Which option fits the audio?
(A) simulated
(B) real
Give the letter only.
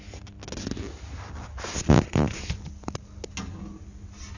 B